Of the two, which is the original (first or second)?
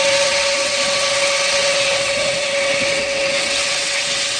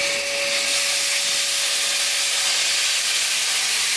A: second